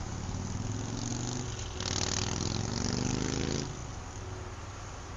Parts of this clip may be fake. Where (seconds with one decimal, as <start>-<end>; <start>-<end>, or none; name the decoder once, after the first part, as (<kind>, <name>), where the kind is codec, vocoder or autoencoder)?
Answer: none